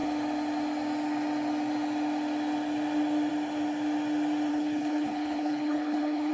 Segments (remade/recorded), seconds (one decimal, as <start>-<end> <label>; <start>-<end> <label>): 0.0-4.5 recorded; 4.5-6.3 remade